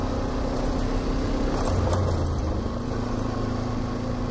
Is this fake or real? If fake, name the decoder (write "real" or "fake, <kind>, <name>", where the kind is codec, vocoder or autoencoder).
real